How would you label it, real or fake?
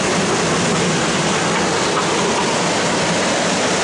real